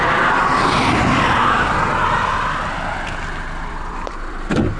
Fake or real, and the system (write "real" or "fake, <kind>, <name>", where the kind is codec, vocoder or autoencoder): fake, vocoder, BigVGAN v2